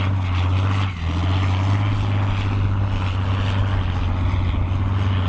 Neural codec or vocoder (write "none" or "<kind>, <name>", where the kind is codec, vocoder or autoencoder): none